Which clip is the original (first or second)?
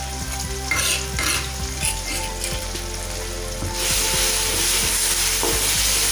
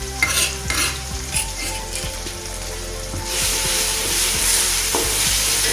first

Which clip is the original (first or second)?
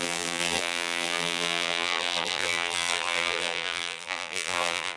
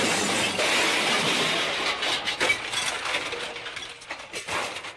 second